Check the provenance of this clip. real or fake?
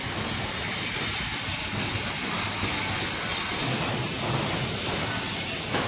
real